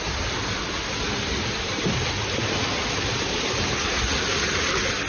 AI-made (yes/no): no